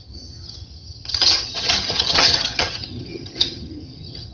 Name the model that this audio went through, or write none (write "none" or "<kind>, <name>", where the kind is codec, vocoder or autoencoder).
vocoder, HiFi-GAN